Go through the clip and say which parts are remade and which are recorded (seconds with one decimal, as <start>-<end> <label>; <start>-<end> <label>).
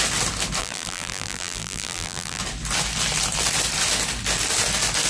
0.0-0.6 recorded; 0.6-2.4 remade; 2.4-5.1 recorded